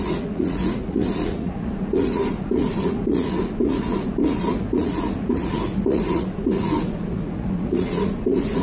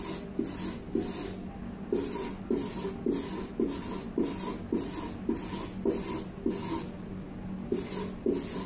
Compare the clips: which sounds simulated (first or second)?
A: first